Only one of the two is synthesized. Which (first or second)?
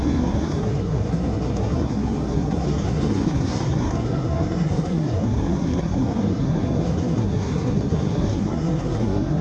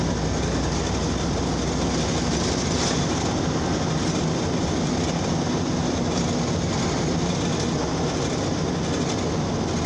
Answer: first